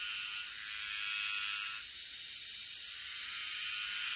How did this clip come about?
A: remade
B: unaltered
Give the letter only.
B